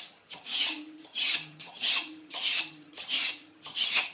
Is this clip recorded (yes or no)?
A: no